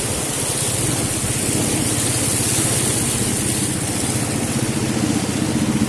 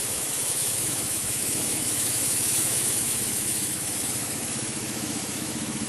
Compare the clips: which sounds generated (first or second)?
second